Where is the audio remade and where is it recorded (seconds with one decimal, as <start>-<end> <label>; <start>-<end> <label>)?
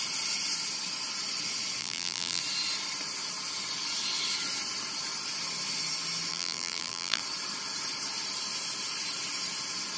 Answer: 0.0-1.8 recorded; 1.8-2.4 remade; 2.4-6.3 recorded; 6.3-7.2 remade; 7.2-10.0 recorded